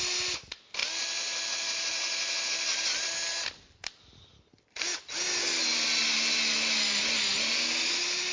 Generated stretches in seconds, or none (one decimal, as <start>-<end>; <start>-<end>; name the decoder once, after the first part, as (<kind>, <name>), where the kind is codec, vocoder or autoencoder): none